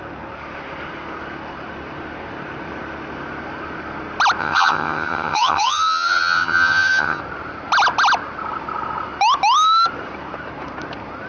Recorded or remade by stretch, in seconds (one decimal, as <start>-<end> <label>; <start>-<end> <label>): 0.0-4.4 recorded; 4.4-7.2 remade; 7.2-11.3 recorded